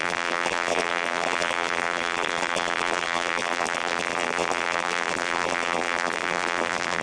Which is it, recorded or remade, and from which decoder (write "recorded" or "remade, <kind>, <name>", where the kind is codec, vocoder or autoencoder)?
remade, vocoder, BigVGAN v2